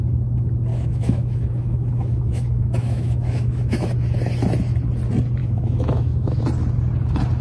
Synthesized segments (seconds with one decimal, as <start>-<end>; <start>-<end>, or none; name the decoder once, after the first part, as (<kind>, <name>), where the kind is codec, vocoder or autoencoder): 0.7-3.9 (autoencoder, DAC-VAE); 5.4-6.4